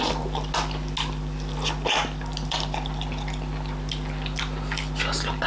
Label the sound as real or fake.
real